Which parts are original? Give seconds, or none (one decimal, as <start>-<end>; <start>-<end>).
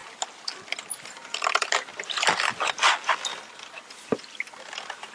1.9-3.5